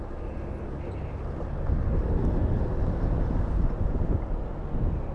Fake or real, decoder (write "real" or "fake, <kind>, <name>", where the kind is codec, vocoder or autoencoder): real